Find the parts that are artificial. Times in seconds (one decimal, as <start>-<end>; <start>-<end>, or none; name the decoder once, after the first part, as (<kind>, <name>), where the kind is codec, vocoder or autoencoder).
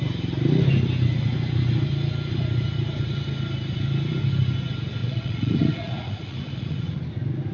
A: 5.0-7.0 (vocoder, Vocos)